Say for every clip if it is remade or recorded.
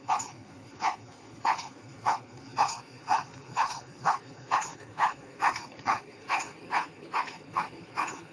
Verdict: remade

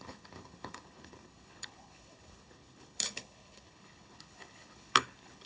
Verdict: remade